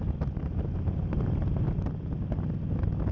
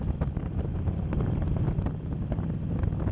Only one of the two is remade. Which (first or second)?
second